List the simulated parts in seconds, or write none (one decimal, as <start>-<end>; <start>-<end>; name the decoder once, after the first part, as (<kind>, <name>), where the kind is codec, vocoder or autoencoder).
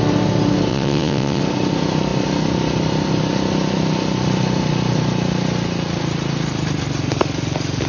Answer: 0.7-1.4 (vocoder, WaveNeXt)